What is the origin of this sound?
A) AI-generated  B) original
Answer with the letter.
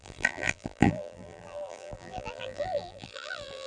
A